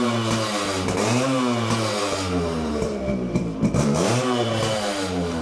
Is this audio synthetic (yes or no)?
yes